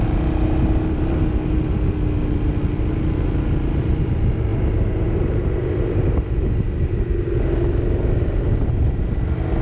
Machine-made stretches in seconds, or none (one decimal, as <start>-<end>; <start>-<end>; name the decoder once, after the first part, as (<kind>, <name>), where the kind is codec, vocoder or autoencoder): none